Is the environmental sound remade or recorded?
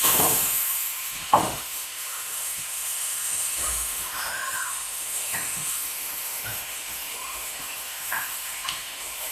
remade